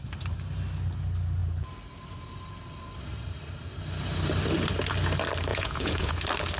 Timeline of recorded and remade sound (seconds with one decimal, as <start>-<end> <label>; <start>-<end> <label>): 0.0-5.5 recorded; 5.5-6.1 remade; 6.1-6.6 recorded